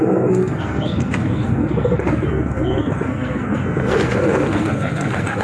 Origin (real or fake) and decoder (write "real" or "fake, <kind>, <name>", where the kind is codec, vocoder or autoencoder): fake, codec, SNAC